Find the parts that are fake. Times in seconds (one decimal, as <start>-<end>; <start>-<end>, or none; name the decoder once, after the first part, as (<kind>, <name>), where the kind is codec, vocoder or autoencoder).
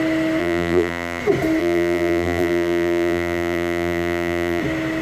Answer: 0.4-1.2 (vocoder, BigVGAN v2); 1.6-4.6